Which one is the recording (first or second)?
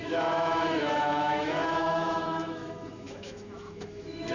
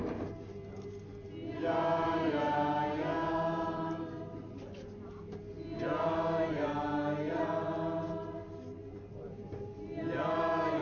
second